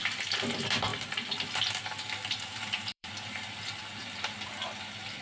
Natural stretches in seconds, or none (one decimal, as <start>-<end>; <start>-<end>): 0.0-0.9; 4.0-5.2